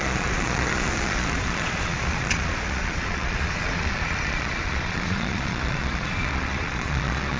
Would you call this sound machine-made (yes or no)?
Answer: yes